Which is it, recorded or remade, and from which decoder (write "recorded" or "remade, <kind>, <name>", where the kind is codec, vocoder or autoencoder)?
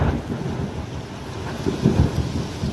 recorded